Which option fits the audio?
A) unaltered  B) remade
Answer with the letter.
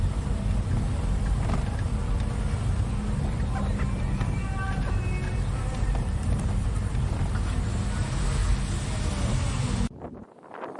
A